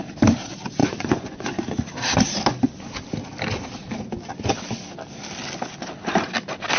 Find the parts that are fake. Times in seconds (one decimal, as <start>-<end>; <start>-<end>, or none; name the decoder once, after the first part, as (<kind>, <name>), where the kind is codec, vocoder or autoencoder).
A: 0.8-1.6 (vocoder, Vocos)